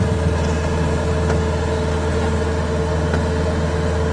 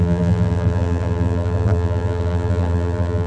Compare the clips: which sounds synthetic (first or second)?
second